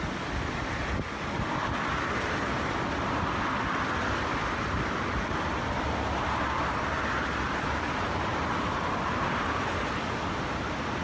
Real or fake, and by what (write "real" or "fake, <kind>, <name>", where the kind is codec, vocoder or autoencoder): real